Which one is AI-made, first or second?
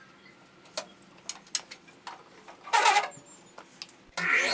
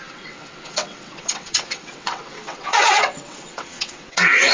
second